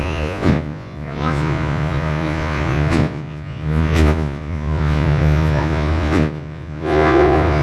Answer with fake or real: fake